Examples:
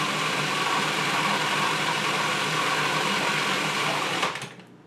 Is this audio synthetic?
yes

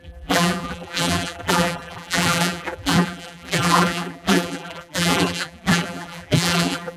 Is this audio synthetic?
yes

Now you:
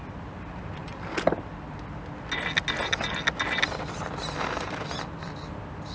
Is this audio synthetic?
no